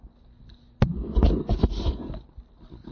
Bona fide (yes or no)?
yes